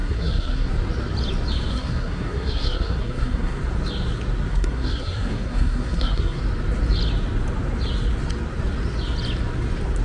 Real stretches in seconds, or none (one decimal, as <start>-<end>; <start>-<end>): 0.7-1.7; 3.6-4.5; 6.4-10.0